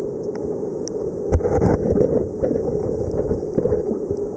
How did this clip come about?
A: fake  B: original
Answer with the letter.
B